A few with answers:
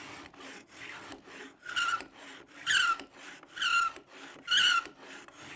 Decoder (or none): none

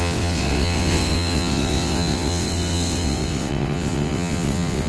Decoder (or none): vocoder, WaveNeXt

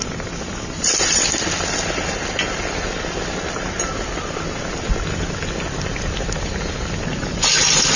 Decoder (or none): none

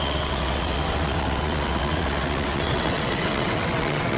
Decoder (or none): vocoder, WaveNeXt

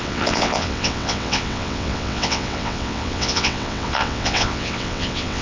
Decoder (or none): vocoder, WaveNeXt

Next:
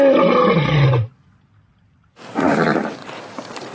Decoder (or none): none